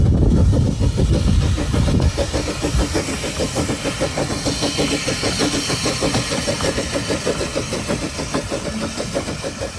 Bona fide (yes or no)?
yes